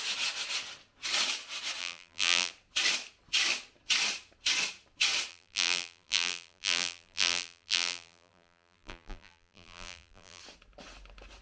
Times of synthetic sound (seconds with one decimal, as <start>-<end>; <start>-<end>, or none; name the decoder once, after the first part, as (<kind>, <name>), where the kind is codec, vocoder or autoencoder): 1.8-2.5 (vocoder, BigVGAN v2); 5.3-10.4